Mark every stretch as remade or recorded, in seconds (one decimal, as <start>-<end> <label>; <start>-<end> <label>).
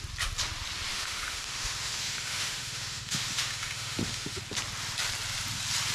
0.0-0.9 recorded; 0.9-4.4 remade; 4.4-5.9 recorded